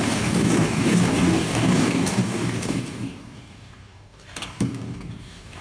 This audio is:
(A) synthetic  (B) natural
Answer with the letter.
A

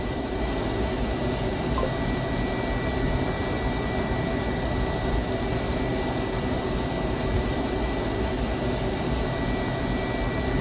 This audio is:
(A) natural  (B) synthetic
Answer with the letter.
A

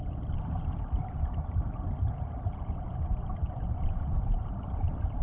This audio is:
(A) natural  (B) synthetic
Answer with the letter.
A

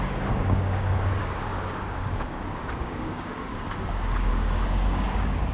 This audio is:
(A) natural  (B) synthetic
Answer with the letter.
B